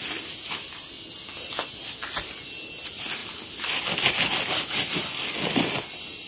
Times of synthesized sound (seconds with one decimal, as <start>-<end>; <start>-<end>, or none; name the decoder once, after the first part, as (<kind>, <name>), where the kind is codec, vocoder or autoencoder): none